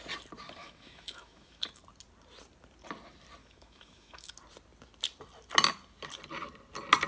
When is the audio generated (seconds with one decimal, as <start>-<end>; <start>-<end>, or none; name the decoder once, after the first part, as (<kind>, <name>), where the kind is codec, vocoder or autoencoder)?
0.6-1.8 (autoencoder, DAC-VAE); 3.4-4.3